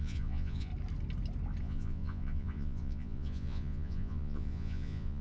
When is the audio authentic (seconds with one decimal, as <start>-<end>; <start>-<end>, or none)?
0.7-1.6